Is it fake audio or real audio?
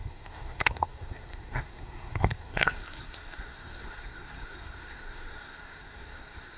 fake